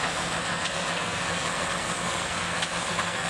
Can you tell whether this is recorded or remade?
remade